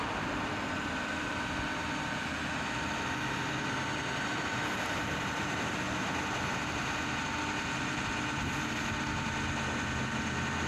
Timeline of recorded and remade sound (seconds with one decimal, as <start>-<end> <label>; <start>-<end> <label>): 0.0-4.3 recorded; 4.3-5.7 remade; 5.7-10.7 recorded